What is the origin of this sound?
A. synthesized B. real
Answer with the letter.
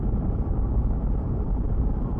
B